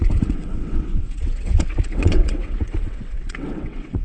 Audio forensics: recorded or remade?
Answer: remade